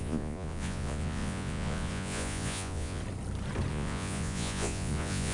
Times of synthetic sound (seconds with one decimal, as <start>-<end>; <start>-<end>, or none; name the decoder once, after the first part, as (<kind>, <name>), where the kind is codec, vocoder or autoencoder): 0.0-3.0 (vocoder, Vocos); 3.7-5.3